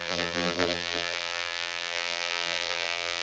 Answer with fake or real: fake